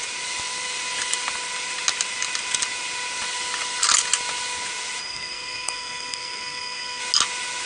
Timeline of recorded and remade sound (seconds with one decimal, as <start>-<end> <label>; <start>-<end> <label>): 0.0-5.0 recorded; 5.0-7.0 remade; 7.0-7.7 recorded